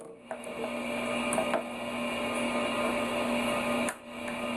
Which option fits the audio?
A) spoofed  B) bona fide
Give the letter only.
B